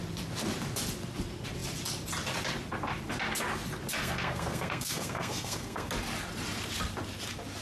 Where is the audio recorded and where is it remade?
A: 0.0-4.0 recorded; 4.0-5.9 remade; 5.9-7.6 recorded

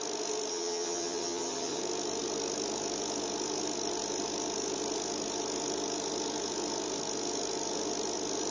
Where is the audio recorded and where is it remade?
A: 0.0-0.5 recorded; 0.5-1.8 remade; 1.8-8.5 recorded

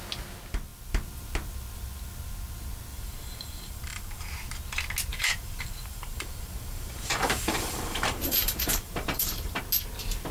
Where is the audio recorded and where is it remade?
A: 0.0-2.9 recorded; 2.9-4.3 remade; 4.3-5.1 recorded; 5.1-9.6 remade; 9.6-10.3 recorded